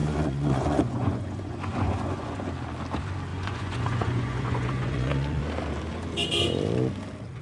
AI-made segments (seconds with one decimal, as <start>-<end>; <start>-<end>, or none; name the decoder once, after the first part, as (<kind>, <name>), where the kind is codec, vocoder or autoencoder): 0.0-2.5 (vocoder, Vocos); 3.3-5.4